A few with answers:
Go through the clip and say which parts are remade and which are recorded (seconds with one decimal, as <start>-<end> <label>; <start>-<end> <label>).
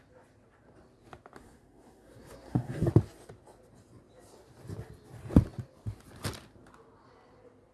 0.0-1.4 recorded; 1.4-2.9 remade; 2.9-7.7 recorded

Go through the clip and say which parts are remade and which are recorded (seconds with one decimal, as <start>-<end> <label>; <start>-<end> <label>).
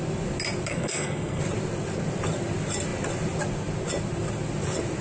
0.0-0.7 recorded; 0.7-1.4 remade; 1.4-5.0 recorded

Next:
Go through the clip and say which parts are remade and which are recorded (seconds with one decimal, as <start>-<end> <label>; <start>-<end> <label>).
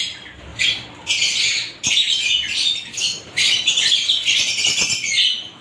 0.0-0.5 recorded; 0.5-1.1 remade; 1.1-1.5 recorded; 1.5-4.9 remade; 4.9-5.6 recorded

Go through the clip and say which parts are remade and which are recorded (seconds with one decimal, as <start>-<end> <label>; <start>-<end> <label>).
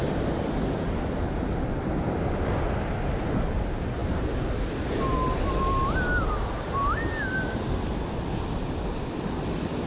0.0-9.9 recorded